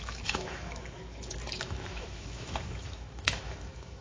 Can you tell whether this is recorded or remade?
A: remade